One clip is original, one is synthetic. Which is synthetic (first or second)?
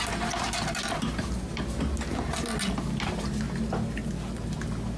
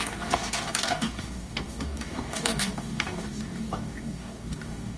second